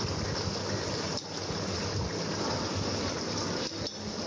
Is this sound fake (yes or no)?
no